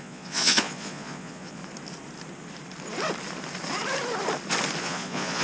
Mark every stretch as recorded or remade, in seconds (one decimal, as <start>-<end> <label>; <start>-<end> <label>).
0.0-1.6 remade; 1.6-4.8 recorded; 4.8-5.4 remade